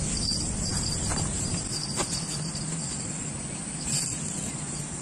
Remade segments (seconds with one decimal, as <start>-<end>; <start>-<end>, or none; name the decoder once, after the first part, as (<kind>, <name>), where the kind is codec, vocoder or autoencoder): 0.7-1.5 (vocoder, BigVGAN v2)